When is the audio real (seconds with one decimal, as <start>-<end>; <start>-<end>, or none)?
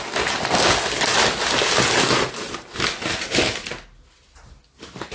0.0-5.1